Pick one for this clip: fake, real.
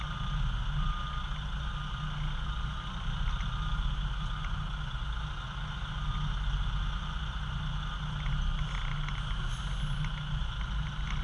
real